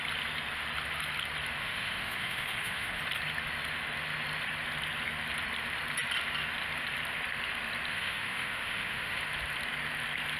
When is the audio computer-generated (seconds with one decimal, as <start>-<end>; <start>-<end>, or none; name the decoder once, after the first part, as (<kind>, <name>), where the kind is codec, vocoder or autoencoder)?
1.6-3.0 (autoencoder, DAC-VAE); 7.9-9.2